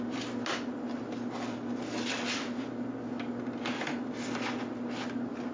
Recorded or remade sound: recorded